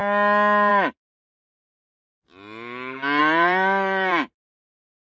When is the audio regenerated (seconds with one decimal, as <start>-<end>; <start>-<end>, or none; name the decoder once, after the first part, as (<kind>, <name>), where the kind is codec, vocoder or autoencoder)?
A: 0.7-1.8 (vocoder, BigVGAN v2); 3.2-5.0